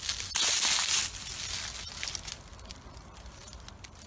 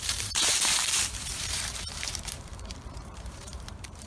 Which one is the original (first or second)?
first